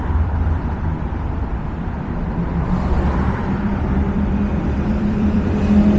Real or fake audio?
fake